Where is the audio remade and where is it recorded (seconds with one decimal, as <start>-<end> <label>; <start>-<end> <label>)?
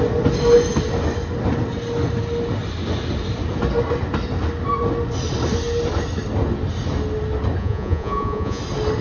0.0-7.6 recorded; 7.6-8.6 remade; 8.6-9.0 recorded